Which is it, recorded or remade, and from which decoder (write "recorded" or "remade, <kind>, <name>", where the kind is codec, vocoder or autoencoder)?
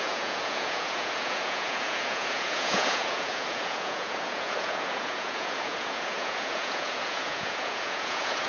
remade, vocoder, Vocos